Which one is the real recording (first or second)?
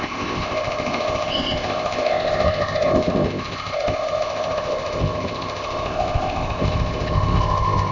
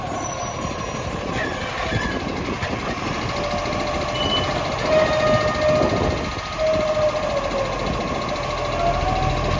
second